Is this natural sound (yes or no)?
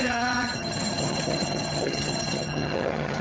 no